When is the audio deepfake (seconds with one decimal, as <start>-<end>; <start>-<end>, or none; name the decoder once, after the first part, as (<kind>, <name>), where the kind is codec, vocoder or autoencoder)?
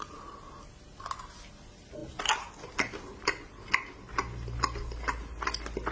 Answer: none